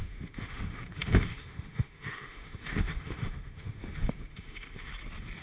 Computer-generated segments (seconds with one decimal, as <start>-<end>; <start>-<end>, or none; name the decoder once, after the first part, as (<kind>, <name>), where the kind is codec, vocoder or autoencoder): 0.0-4.9 (autoencoder, DAC-VAE)